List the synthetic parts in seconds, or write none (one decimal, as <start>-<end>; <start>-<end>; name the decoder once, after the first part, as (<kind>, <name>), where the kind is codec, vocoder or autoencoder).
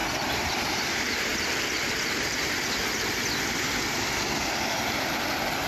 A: none